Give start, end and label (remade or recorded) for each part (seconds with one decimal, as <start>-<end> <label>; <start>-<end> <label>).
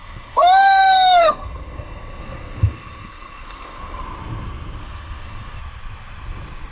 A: 0.0-4.0 remade; 4.0-4.8 recorded; 4.8-5.6 remade; 5.6-6.7 recorded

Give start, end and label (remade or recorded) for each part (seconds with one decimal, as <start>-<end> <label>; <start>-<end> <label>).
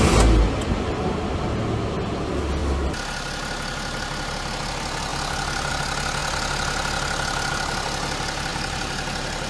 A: 0.0-9.5 recorded